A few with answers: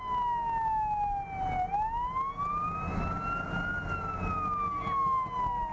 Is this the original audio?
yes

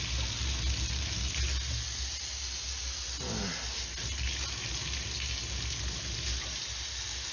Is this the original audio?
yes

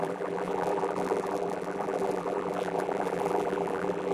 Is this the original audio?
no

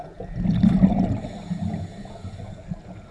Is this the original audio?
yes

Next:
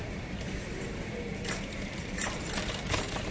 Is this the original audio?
no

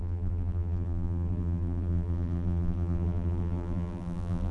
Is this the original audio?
no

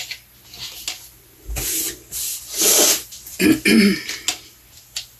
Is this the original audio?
yes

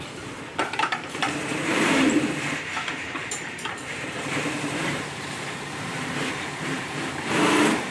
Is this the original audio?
no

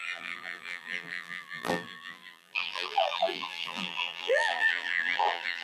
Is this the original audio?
no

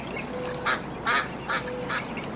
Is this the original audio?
yes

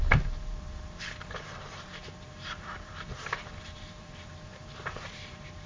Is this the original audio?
no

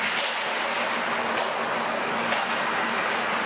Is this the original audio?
yes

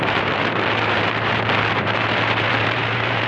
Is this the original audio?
no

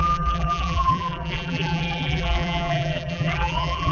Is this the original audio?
no